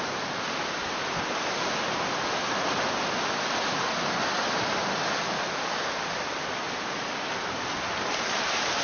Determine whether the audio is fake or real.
real